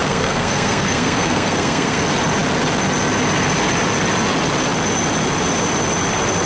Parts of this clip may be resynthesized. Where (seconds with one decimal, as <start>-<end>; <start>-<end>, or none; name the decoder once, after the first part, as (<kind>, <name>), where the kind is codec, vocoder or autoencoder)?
0.0-2.0 (codec, SNAC)

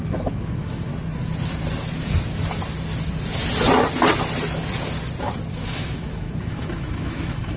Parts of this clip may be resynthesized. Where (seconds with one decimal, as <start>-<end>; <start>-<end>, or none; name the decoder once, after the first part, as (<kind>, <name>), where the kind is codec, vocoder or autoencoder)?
0.0-0.9 (autoencoder, DAC-VAE); 5.5-7.6

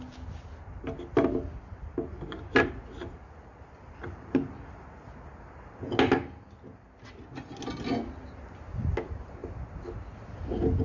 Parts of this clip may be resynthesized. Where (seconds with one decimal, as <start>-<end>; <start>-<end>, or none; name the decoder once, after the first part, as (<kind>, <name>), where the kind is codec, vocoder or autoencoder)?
none

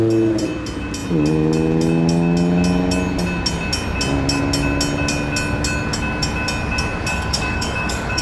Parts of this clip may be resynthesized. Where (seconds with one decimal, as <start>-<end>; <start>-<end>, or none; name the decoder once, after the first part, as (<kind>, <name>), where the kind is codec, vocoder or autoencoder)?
7.1-8.2 (codec, DAC)

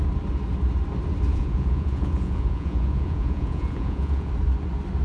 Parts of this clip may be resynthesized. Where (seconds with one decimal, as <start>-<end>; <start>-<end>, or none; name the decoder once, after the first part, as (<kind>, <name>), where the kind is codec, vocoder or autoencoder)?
1.3-4.3 (vocoder, Vocos)

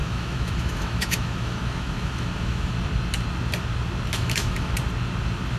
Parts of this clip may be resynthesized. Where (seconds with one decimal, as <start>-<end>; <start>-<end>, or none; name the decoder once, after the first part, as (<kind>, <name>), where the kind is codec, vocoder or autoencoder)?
0.0-2.7 (autoencoder, DAC-VAE); 4.1-4.7

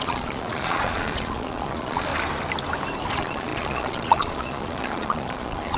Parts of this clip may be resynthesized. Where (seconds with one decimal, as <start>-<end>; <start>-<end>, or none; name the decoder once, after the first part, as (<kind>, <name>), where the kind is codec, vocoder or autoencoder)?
0.0-2.1 (vocoder, Vocos); 3.1-5.8